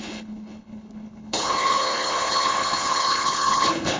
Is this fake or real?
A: fake